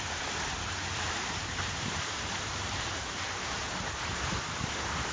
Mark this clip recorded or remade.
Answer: remade